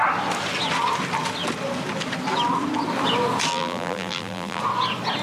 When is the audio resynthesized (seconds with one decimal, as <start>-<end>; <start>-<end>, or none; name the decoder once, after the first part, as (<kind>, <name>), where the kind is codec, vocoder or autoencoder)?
3.5-4.6 (vocoder, BigVGAN v2)